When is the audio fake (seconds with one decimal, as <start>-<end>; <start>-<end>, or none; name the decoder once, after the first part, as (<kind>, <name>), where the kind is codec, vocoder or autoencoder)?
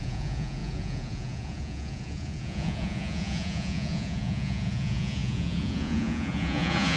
0.0-7.0 (vocoder, Vocos)